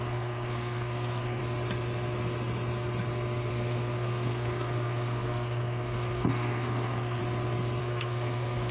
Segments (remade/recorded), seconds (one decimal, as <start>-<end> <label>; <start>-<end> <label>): 0.0-1.4 remade; 1.4-3.5 recorded; 3.5-7.2 remade; 7.2-7.8 recorded; 7.8-8.7 remade